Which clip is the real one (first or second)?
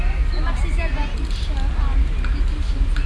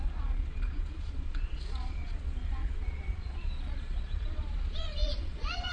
first